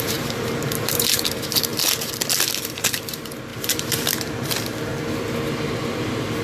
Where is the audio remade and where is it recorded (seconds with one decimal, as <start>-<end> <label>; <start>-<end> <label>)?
0.0-1.7 remade; 1.7-2.6 recorded; 2.6-4.9 remade; 4.9-5.5 recorded; 5.5-6.4 remade